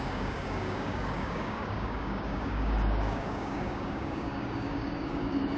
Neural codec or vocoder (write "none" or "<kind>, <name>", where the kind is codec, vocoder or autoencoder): codec, DAC